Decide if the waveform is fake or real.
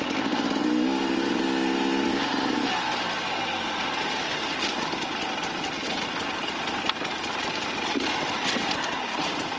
real